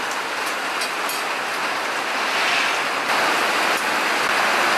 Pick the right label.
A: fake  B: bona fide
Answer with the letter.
B